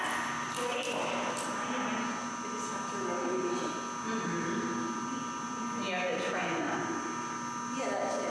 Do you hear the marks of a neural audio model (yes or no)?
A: no